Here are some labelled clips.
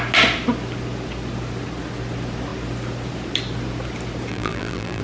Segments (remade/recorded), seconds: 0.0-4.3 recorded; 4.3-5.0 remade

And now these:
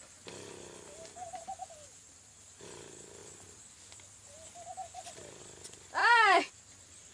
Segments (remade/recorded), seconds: 0.0-7.1 recorded

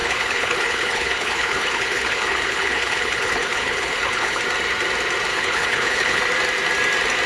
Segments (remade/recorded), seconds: 0.0-4.4 remade; 4.4-5.3 recorded; 5.3-6.2 remade; 6.2-7.3 recorded

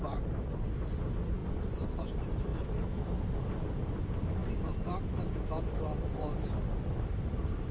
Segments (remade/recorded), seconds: 0.0-2.5 remade; 2.5-3.3 recorded; 3.3-4.4 remade; 4.4-5.7 recorded; 5.7-7.7 remade

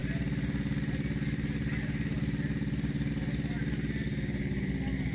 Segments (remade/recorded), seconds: 0.0-5.1 recorded

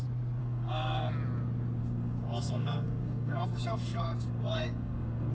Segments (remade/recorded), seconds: 0.0-0.4 recorded; 0.4-1.1 remade; 1.1-1.8 recorded; 1.8-5.3 remade